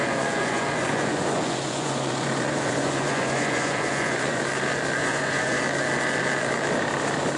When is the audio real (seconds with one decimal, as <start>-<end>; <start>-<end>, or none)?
4.4-5.0; 5.6-7.4